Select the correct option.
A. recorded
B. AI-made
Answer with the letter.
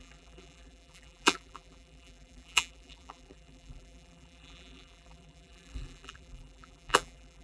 B